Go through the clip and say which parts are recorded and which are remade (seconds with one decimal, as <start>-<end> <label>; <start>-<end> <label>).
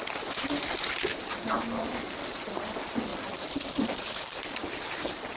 0.0-3.1 recorded; 3.1-4.4 remade; 4.4-5.4 recorded